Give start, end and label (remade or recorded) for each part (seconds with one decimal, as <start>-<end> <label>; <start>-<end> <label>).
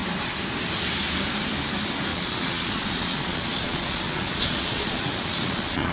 0.0-2.1 recorded; 2.1-5.9 remade